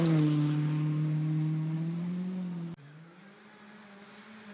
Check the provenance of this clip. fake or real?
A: real